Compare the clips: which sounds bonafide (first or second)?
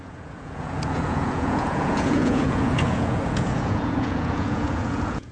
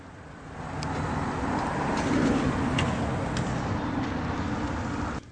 second